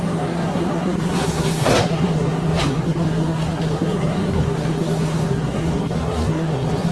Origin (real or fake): fake